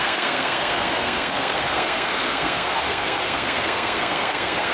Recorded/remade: remade